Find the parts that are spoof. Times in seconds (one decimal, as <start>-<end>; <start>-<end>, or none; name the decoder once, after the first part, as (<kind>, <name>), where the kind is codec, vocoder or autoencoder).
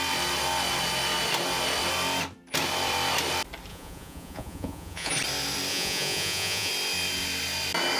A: 3.7-5.1 (vocoder, Vocos); 5.7-6.7